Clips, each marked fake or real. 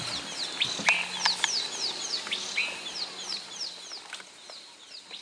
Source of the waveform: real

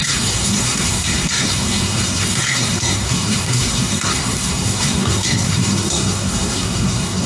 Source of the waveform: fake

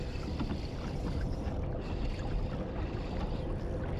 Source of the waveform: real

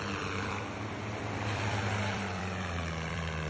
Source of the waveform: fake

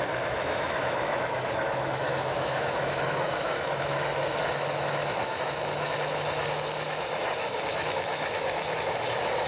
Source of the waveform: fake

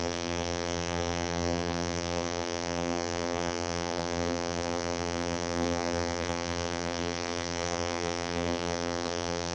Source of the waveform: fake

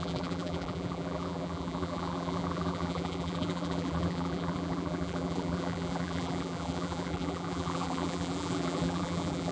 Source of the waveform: fake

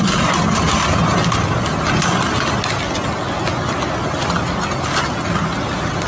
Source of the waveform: real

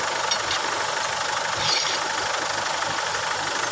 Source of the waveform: real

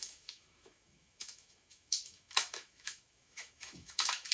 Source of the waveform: fake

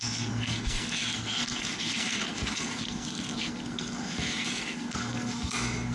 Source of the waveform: fake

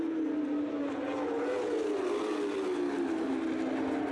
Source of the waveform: real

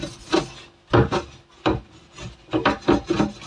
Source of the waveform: real